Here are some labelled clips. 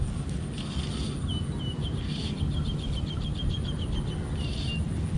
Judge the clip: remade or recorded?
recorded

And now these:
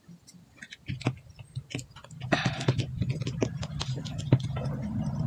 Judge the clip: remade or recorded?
recorded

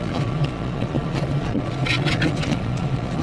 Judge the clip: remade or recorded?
remade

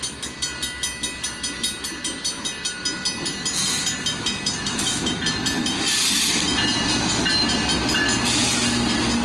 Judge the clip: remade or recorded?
recorded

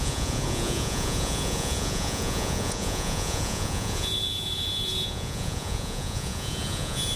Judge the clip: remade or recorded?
remade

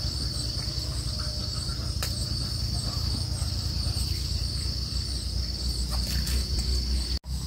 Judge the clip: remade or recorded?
recorded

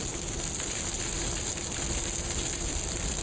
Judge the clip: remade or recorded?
recorded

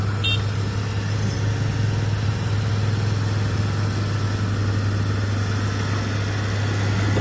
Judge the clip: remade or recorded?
recorded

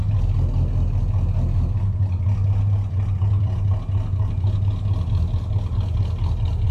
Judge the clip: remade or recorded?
recorded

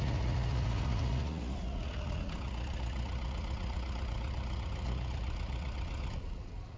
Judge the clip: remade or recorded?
remade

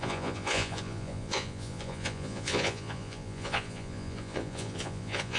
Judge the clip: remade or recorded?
remade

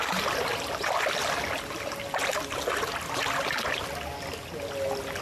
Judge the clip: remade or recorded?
recorded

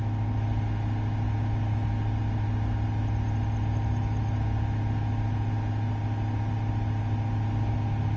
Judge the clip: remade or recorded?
recorded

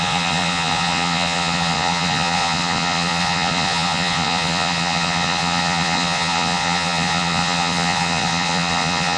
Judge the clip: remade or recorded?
remade